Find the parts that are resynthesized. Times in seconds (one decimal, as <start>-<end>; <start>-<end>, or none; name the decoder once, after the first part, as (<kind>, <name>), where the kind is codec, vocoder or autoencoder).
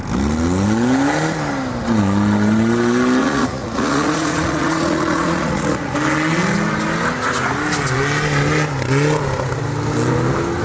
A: 3.2-5.9 (vocoder, Vocos)